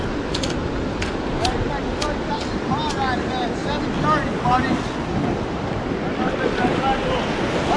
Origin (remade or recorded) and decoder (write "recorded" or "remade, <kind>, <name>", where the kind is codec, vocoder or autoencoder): recorded